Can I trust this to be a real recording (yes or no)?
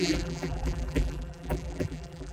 no